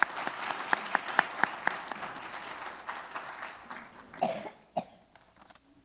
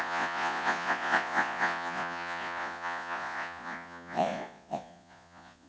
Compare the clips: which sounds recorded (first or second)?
first